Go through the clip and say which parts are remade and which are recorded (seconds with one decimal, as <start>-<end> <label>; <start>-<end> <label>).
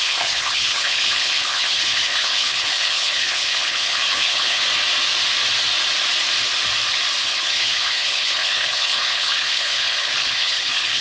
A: 0.0-4.6 remade; 4.6-7.2 recorded; 7.2-11.0 remade